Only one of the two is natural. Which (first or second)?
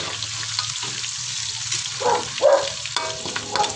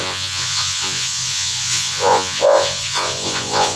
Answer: first